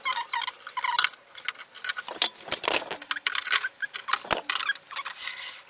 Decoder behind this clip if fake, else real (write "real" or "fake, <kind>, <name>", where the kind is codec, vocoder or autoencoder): real